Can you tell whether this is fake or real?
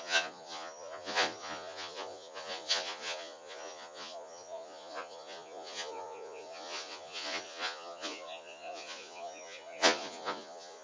fake